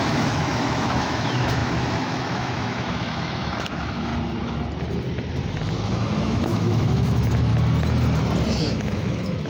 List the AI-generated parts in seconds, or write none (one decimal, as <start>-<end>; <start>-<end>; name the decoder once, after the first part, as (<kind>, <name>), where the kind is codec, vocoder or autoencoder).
0.0-4.1 (autoencoder, DAC-VAE); 5.9-7.5; 8.6-9.5

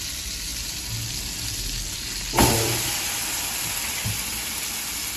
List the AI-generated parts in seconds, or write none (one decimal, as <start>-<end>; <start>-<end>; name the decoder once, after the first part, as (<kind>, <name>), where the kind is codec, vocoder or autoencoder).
none